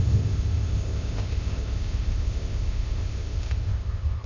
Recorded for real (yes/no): no